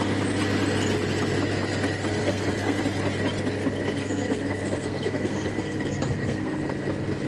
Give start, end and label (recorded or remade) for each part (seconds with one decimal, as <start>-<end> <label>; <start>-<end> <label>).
0.0-2.2 recorded; 2.2-2.8 remade; 2.8-4.0 recorded; 4.0-6.6 remade; 6.6-7.3 recorded